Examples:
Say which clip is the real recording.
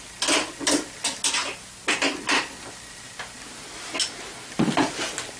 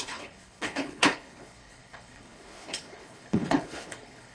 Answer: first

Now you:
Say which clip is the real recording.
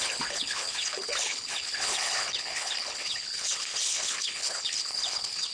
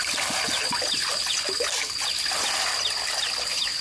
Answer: second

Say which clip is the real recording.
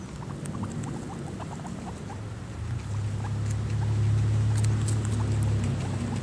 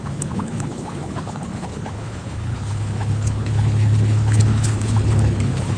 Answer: first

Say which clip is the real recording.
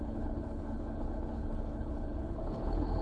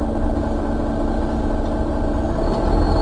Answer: second